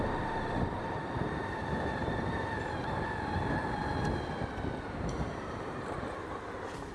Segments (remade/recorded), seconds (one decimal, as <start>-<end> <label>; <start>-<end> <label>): 0.0-3.8 remade; 3.8-4.9 recorded; 4.9-6.9 remade